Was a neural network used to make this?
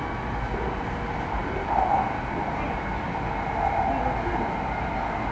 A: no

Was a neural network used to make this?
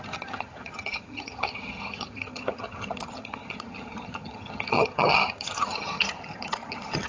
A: yes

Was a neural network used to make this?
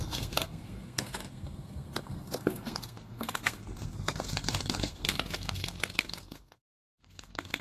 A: yes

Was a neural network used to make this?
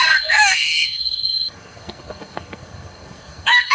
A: yes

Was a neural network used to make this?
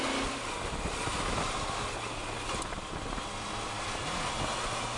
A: no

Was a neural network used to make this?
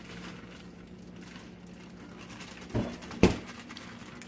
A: no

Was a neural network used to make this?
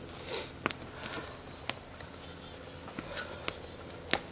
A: no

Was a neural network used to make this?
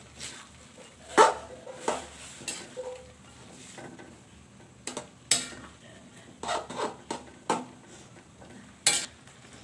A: no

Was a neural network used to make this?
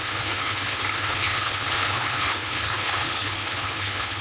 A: yes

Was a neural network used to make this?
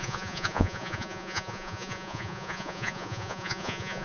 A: yes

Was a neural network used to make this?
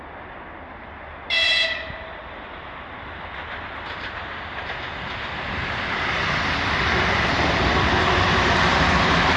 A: no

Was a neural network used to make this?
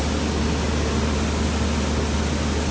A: no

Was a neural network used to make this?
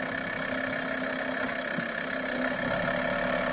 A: no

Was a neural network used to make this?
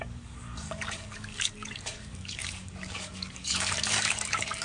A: yes